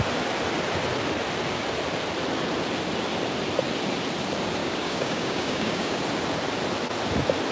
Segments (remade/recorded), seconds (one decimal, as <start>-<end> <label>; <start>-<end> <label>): 0.0-4.6 recorded; 4.6-6.0 remade; 6.0-7.5 recorded